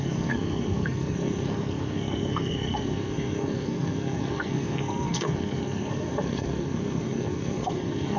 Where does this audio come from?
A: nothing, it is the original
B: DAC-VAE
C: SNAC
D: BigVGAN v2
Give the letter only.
C